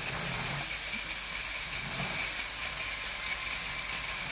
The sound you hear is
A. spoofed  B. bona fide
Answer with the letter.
B